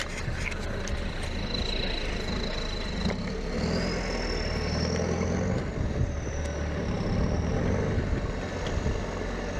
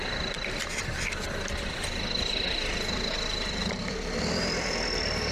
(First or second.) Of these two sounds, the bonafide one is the first